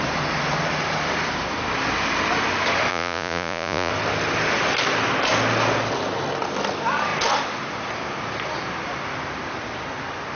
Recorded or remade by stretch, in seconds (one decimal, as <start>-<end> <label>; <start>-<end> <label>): 0.0-2.9 recorded; 2.9-3.9 remade; 3.9-10.4 recorded